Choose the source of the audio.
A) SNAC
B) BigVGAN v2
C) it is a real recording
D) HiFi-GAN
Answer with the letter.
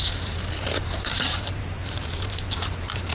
B